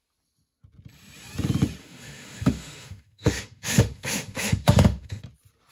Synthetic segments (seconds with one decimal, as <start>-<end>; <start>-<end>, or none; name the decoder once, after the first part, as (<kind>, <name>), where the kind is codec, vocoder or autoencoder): 1.8-5.2 (autoencoder, DAC-VAE)